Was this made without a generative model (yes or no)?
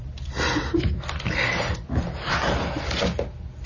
yes